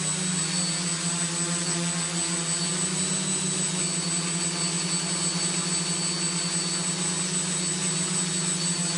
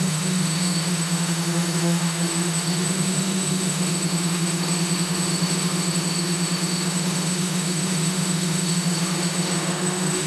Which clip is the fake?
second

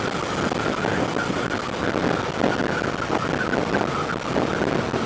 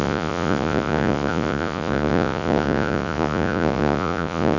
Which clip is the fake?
second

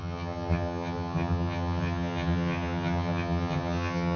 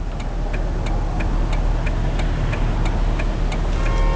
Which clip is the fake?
first